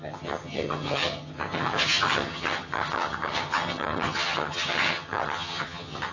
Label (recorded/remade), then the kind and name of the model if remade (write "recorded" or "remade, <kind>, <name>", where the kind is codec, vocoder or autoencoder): remade, vocoder, HiFi-GAN